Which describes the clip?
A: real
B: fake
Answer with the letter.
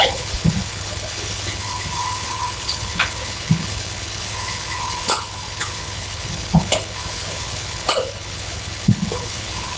B